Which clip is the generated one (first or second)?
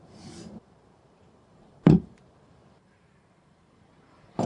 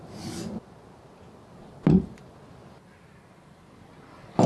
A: first